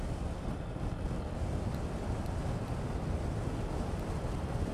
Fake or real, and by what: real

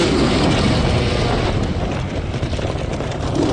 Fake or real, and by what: real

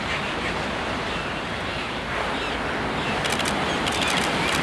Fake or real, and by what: real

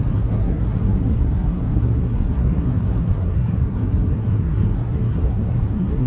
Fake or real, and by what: fake, codec, SNAC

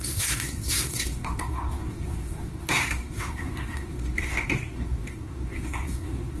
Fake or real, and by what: fake, codec, SNAC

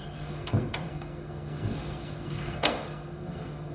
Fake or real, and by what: fake, codec, SNAC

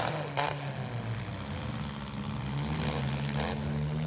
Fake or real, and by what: real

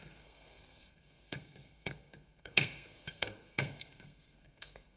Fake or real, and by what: fake, codec, SNAC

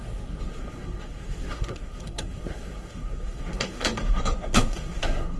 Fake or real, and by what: fake, codec, SNAC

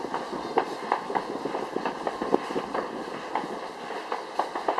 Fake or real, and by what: real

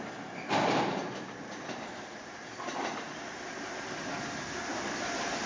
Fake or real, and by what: real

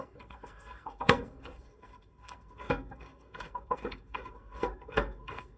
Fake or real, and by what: fake, codec, SNAC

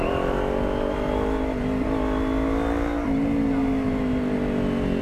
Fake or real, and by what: real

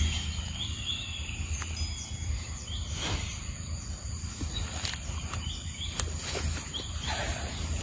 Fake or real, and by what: real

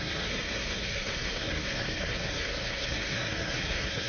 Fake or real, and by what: fake, codec, SNAC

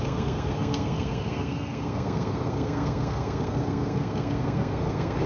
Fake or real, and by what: fake, codec, SNAC